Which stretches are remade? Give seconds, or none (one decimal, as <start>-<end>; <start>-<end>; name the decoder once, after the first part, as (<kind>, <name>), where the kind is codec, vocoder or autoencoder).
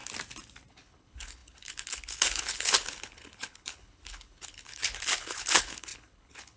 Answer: 0.7-6.6 (codec, HILCodec)